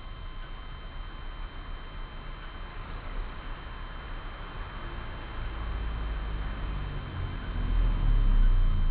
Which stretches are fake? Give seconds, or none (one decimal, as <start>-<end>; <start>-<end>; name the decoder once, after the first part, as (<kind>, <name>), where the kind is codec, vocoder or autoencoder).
2.7-3.4 (codec, DAC)